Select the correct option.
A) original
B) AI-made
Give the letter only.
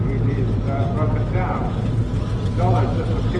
A